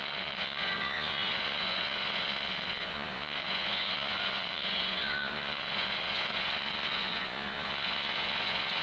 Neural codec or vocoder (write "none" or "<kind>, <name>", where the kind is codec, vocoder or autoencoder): vocoder, Vocos